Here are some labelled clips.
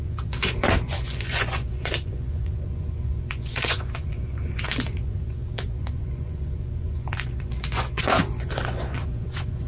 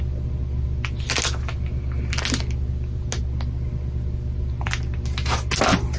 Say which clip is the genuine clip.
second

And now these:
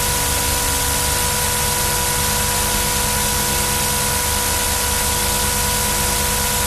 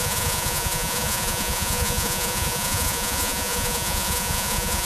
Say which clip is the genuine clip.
first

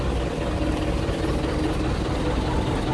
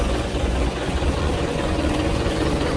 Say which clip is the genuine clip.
first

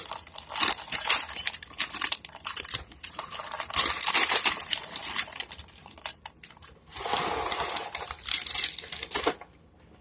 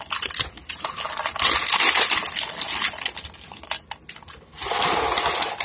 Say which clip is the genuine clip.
second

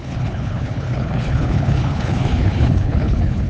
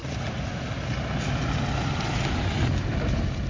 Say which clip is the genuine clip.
second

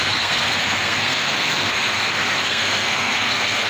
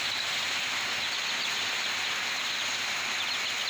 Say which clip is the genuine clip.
second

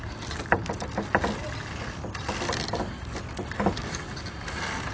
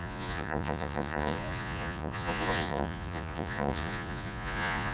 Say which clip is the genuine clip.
first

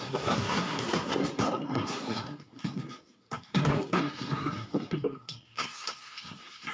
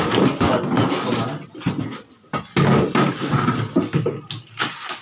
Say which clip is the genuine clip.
second